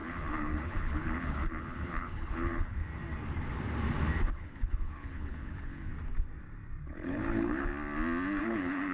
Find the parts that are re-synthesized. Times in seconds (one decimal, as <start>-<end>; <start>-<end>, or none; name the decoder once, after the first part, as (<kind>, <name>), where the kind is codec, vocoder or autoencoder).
0.0-2.8 (codec, HILCodec); 4.3-5.9; 6.8-7.7; 8.4-8.9